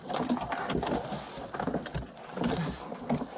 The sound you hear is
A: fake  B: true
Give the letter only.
B